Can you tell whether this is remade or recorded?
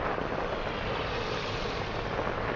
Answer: recorded